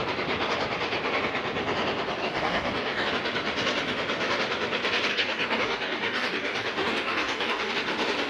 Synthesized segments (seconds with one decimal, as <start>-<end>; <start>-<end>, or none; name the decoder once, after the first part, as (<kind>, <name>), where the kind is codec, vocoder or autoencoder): 2.2-3.1 (codec, DAC); 5.1-7.7